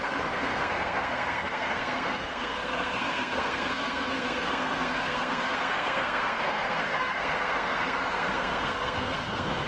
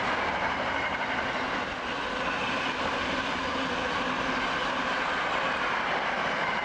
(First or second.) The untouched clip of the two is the second